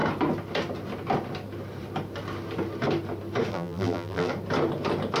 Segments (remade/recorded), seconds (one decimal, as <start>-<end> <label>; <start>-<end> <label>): 0.0-3.5 recorded; 3.5-4.3 remade; 4.3-5.2 recorded